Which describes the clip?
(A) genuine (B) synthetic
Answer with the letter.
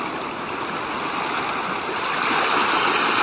A